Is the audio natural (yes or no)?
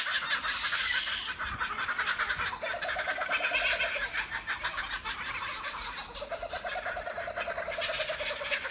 yes